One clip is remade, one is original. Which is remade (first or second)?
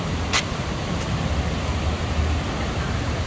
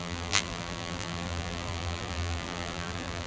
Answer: second